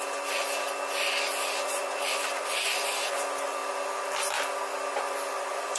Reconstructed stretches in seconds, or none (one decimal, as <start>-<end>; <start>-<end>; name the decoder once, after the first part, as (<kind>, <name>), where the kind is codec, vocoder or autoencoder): 0.0-3.6 (vocoder, Vocos); 4.9-5.8